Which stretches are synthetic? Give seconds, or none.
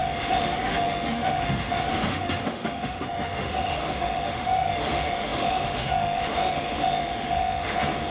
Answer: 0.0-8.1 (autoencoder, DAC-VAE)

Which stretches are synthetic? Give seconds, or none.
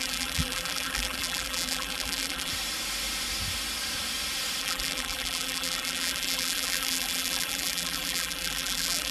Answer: 0.0-2.5 (vocoder, BigVGAN v2); 4.6-9.1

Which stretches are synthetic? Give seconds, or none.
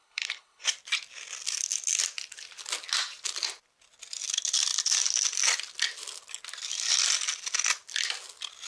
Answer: 0.0-0.7 (codec, HILCodec)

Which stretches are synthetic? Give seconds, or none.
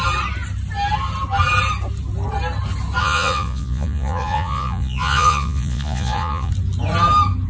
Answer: 3.0-6.5 (vocoder, Vocos)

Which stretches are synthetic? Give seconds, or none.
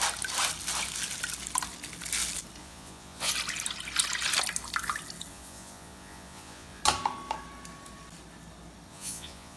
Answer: 2.6-3.3 (vocoder, Vocos); 5.3-6.8; 8.9-9.6